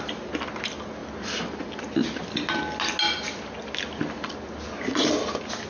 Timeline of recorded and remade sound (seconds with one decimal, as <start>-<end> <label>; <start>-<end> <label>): 0.0-1.0 recorded; 1.0-1.8 remade; 1.8-5.7 recorded